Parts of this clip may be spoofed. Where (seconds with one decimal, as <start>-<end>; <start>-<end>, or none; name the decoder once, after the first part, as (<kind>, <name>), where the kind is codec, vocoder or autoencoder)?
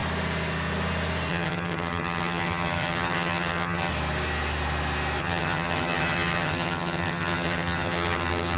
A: 1.3-3.9 (vocoder, HiFi-GAN); 5.2-8.6